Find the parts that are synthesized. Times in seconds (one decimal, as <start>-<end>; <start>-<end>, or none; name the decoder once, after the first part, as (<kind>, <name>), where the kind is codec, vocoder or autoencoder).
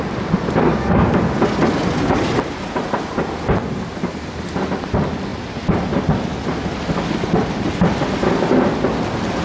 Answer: 0.6-1.1 (codec, SNAC)